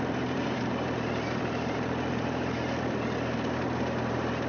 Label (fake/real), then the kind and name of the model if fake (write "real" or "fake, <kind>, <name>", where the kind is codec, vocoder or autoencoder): fake, vocoder, BigVGAN v2